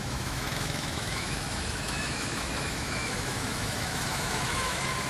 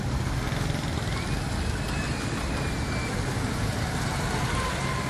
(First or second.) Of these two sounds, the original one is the second